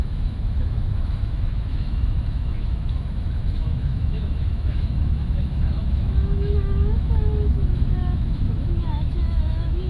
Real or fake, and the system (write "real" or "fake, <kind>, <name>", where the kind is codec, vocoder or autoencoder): fake, autoencoder, DAC-VAE